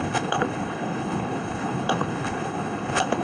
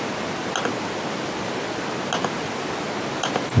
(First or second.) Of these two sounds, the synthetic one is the first